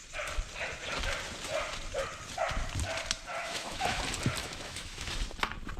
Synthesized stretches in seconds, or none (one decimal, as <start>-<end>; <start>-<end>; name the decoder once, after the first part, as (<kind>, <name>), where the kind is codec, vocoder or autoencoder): 3.4-4.0 (autoencoder, DAC-VAE); 4.4-5.1